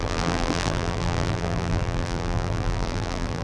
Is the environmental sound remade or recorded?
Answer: remade